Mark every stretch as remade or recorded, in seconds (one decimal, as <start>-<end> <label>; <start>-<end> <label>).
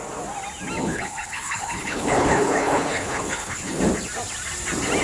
0.0-0.8 recorded; 0.8-3.8 remade; 3.8-5.0 recorded